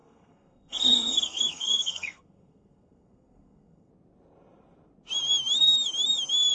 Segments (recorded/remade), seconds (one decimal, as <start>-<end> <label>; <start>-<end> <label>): 0.0-3.9 remade; 3.9-6.5 recorded